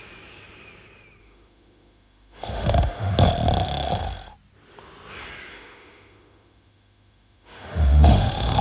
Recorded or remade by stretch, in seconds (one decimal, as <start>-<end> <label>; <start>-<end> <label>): 0.0-1.2 recorded; 1.2-3.1 remade; 3.1-5.5 recorded; 5.5-8.6 remade